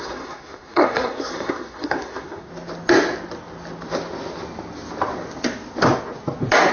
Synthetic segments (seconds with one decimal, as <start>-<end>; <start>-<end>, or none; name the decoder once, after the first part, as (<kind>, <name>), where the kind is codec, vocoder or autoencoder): 0.0-2.5 (codec, SNAC)